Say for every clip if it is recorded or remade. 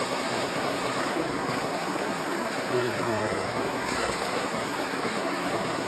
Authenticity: remade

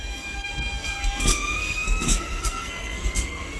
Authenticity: remade